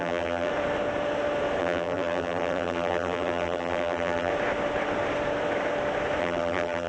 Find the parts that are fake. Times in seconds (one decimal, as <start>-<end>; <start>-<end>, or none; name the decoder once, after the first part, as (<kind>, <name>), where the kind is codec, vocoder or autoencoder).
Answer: 0.0-0.5 (vocoder, BigVGAN v2); 1.6-4.3; 6.2-6.9